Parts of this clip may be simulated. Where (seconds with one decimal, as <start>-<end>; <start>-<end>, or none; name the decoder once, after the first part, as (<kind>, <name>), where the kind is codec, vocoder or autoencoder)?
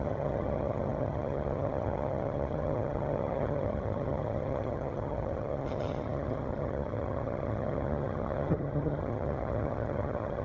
0.0-10.4 (vocoder, HiFi-GAN)